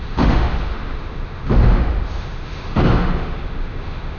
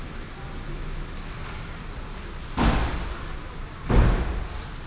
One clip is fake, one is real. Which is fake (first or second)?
first